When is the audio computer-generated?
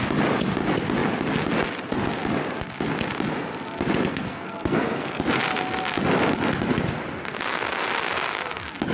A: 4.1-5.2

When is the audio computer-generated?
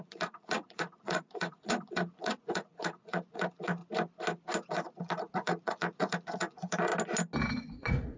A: 0.0-3.8; 4.7-6.9; 7.5-8.2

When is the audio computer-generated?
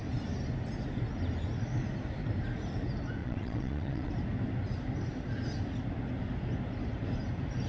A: 3.2-4.1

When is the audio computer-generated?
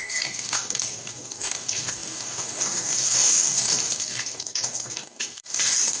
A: 0.0-6.0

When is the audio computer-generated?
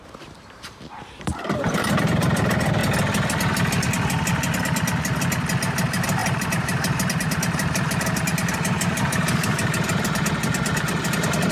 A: 0.0-2.8; 5.6-11.5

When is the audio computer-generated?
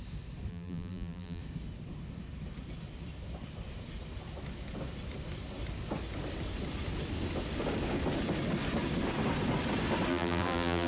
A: 0.5-1.4; 10.1-10.9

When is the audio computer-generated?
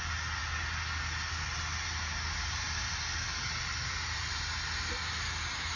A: none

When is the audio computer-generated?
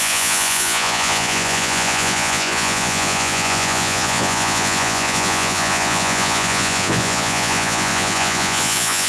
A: 0.0-9.1